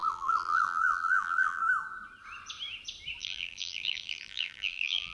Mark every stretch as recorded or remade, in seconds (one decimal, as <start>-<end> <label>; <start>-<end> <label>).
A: 0.0-1.6 remade; 1.6-3.2 recorded; 3.2-5.1 remade